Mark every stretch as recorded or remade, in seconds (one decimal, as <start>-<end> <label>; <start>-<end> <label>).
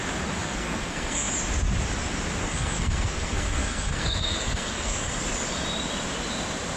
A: 0.0-0.4 recorded; 0.4-1.3 remade; 1.3-2.4 recorded; 2.4-5.2 remade; 5.2-6.8 recorded